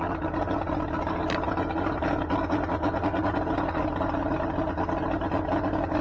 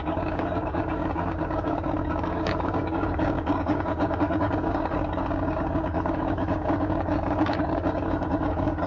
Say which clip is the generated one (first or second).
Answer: second